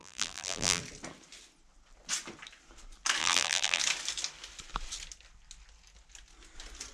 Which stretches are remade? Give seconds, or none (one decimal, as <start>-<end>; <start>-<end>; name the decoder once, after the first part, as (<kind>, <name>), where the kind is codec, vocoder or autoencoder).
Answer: 0.0-0.8 (vocoder, BigVGAN v2); 3.2-3.8